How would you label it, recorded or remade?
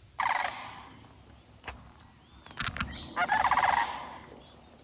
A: recorded